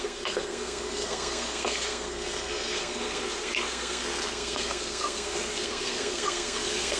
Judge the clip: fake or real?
fake